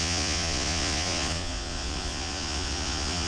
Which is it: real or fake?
fake